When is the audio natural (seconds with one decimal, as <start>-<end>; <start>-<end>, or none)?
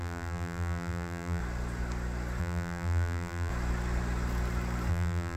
1.4-2.4; 3.5-4.9